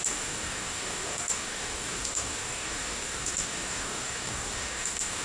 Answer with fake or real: fake